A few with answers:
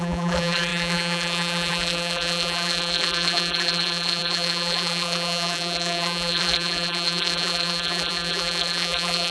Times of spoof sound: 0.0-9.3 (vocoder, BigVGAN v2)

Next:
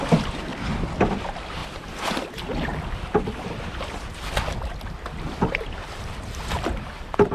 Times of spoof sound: 0.0-0.5 (vocoder, BigVGAN v2); 1.1-2.7; 6.5-7.3

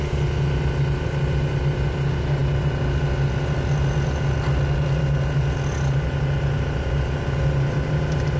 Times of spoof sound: none

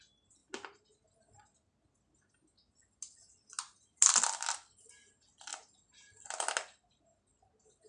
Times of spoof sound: none

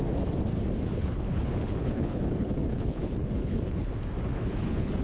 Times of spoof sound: 0.9-3.9 (codec, HILCodec); 4.3-5.0